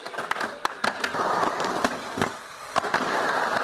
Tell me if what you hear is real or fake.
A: real